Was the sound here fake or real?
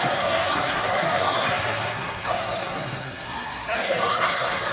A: fake